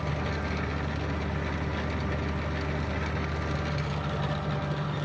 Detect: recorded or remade recorded